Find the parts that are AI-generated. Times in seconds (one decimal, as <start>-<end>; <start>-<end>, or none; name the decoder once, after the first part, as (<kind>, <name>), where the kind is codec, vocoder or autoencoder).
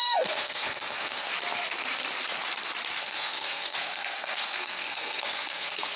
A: 0.0-1.3 (codec, SNAC); 3.0-6.0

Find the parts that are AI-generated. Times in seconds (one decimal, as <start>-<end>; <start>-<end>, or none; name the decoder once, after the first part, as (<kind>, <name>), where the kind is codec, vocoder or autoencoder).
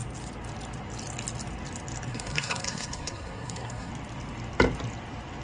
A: 2.1-3.9 (codec, SNAC)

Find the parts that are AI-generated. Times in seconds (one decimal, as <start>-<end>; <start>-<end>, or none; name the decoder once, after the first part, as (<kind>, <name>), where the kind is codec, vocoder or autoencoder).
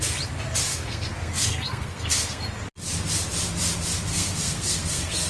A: 0.7-2.4 (codec, SNAC); 4.1-5.3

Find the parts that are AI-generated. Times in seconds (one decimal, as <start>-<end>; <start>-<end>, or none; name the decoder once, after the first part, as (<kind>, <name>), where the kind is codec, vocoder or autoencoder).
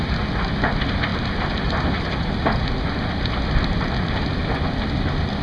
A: 1.1-4.3 (vocoder, BigVGAN v2)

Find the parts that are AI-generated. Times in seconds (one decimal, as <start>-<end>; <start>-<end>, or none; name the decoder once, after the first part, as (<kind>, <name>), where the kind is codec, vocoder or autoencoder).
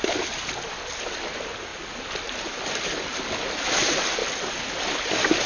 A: none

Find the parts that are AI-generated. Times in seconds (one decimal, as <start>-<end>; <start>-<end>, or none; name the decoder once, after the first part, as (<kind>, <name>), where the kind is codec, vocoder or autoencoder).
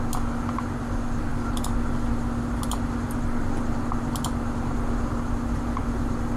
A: none